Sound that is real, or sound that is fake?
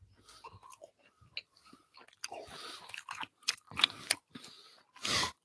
real